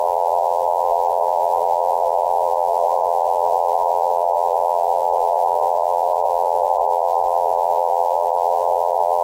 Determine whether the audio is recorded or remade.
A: remade